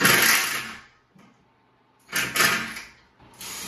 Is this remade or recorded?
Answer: recorded